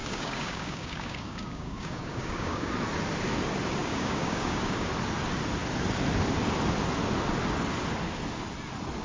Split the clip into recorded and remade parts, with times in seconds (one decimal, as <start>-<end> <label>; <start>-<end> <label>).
0.0-2.7 remade; 2.7-3.8 recorded; 3.8-4.9 remade; 4.9-9.0 recorded